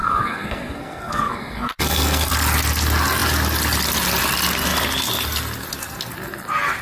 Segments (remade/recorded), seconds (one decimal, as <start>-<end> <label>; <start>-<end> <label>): 0.0-2.3 remade; 2.3-6.8 recorded